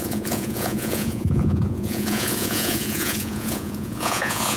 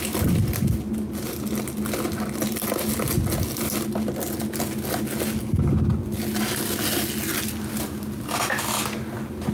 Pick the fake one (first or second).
first